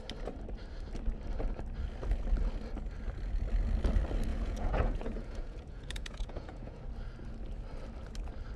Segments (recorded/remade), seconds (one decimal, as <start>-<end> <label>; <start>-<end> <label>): 0.0-4.3 recorded; 4.3-6.8 remade; 6.8-8.6 recorded